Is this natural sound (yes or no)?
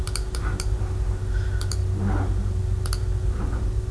yes